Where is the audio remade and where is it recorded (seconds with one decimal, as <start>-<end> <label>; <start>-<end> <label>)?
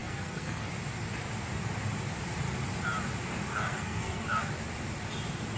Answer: 0.0-0.7 remade; 0.7-3.5 recorded; 3.5-4.5 remade; 4.5-5.6 recorded